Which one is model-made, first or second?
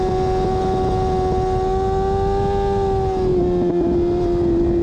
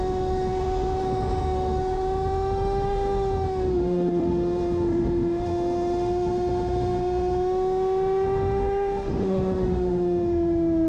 second